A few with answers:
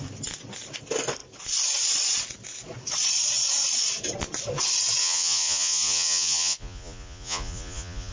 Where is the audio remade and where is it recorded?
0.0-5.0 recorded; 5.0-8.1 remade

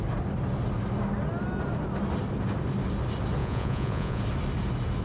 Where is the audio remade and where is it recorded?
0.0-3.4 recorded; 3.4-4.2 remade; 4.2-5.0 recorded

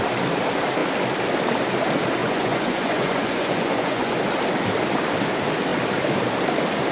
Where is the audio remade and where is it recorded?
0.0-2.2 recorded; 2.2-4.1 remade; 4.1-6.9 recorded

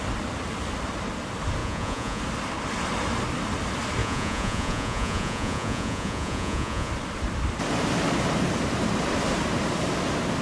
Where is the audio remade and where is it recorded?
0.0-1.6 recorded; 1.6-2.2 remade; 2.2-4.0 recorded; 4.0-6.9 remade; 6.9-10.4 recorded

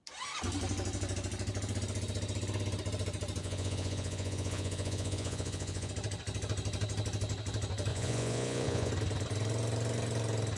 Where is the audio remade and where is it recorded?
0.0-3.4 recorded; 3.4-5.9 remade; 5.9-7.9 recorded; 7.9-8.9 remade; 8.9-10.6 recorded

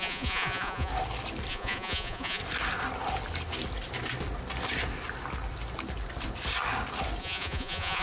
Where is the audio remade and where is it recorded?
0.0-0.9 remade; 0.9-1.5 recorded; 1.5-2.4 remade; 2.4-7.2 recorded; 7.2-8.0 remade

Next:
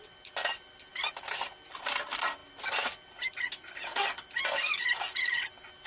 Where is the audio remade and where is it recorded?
0.0-5.9 recorded

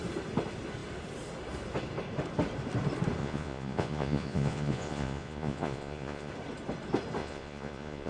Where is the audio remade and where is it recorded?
0.0-3.2 recorded; 3.2-6.3 remade; 6.3-7.2 recorded; 7.2-8.1 remade